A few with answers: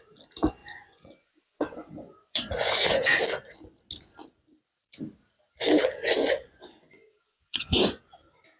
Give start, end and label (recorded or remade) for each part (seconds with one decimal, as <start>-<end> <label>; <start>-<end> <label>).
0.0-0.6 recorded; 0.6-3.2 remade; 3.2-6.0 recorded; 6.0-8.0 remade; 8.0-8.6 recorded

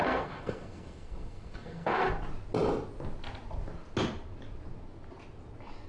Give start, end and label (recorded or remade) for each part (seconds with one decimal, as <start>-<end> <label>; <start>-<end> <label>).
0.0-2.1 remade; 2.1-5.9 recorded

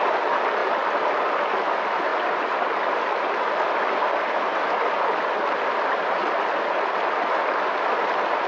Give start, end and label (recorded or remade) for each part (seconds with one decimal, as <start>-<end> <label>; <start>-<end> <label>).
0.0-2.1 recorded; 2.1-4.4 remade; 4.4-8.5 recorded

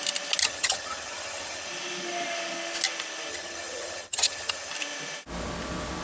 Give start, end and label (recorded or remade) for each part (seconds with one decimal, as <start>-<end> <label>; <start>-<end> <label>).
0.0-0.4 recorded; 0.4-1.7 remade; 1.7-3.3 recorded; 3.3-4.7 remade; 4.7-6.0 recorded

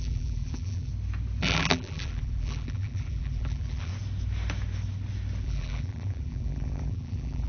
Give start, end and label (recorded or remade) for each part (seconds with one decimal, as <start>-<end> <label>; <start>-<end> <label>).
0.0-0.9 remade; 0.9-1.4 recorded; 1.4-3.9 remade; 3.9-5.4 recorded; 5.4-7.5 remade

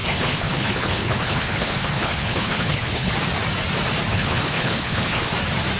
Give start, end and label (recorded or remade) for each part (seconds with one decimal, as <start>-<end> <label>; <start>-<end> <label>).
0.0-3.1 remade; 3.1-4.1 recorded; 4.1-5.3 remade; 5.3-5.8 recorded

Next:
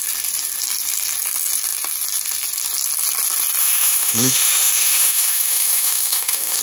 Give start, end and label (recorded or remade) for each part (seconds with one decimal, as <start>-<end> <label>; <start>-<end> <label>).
0.0-3.6 recorded; 3.6-6.6 remade

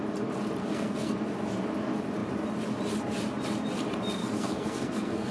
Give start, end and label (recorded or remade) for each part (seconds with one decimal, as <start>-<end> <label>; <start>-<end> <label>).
0.0-0.6 recorded; 0.6-1.2 remade; 1.2-4.2 recorded; 4.2-5.3 remade